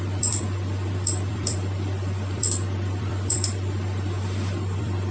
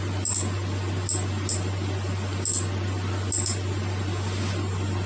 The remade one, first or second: first